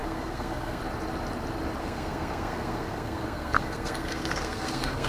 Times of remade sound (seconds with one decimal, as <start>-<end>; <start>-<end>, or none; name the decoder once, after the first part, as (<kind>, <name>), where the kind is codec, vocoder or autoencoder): 0.0-0.8 (codec, SNAC); 1.8-5.1